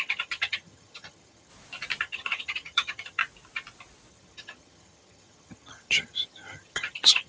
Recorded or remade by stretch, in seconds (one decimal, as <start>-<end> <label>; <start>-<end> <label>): 0.0-1.5 remade; 1.5-2.0 recorded; 2.0-3.2 remade; 3.2-4.1 recorded; 4.1-7.3 remade